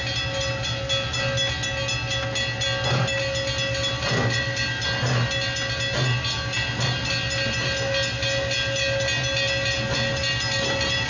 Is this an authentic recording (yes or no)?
yes